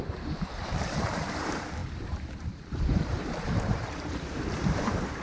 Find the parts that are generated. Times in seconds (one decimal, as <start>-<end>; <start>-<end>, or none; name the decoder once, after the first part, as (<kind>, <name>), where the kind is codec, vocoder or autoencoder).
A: 0.0-5.2 (vocoder, BigVGAN v2)